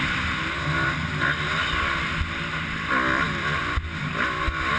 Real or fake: real